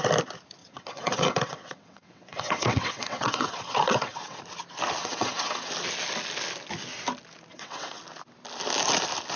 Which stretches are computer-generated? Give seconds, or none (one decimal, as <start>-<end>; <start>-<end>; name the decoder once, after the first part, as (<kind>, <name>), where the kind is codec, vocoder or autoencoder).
0.6-4.4 (vocoder, WaveNeXt); 5.0-5.7; 7.5-8.0